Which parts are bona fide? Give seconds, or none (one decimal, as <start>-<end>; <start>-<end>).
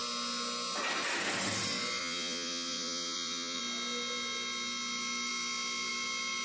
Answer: 0.0-2.0; 3.6-6.4